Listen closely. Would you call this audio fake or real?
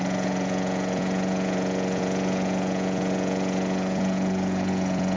fake